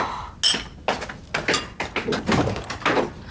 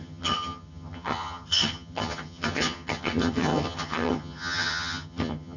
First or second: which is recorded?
first